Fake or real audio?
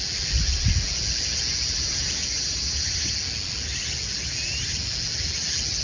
real